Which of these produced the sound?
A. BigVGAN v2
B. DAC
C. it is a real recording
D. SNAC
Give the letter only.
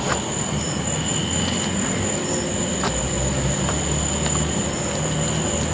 C